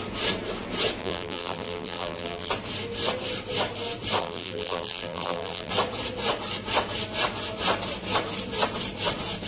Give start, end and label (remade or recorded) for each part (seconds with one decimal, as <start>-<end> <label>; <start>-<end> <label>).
0.0-1.0 recorded; 1.0-2.5 remade; 2.5-4.2 recorded; 4.2-5.7 remade; 5.7-9.5 recorded